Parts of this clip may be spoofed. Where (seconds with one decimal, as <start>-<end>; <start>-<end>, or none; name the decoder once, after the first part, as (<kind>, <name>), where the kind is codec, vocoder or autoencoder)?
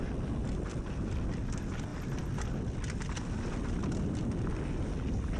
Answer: none